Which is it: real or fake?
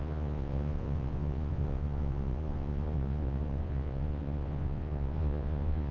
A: fake